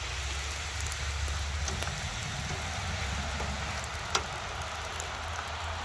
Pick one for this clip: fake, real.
real